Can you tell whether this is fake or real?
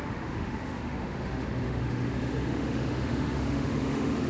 fake